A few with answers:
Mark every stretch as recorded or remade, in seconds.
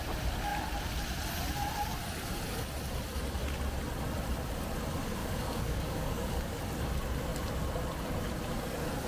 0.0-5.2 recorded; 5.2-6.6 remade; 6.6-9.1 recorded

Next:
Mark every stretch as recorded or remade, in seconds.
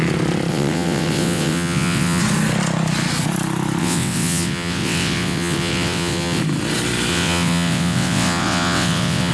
0.0-0.5 recorded; 0.5-2.2 remade; 2.2-3.8 recorded; 3.8-6.4 remade; 6.4-7.1 recorded; 7.1-9.3 remade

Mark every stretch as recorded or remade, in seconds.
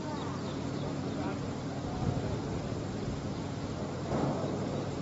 0.0-5.0 remade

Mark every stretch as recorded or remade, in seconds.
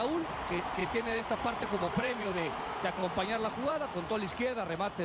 0.0-0.8 recorded; 0.8-2.6 remade; 2.6-5.0 recorded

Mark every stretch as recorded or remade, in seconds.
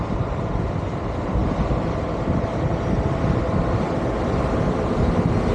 0.0-1.4 remade; 1.4-3.4 recorded; 3.4-5.5 remade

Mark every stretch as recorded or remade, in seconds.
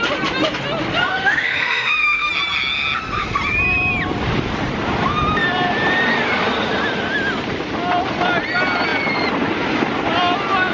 0.0-1.1 recorded; 1.1-2.3 remade; 2.3-10.7 recorded